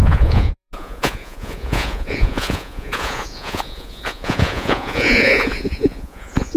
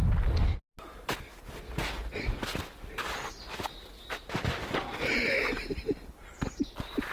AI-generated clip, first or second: first